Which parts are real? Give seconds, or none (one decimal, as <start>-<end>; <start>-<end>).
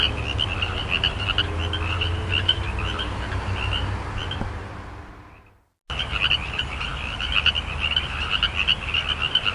0.0-9.5